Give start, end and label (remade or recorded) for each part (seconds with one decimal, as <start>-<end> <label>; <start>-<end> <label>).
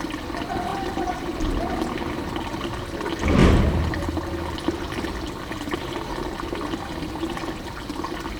0.0-0.7 recorded; 0.7-1.5 remade; 1.5-8.4 recorded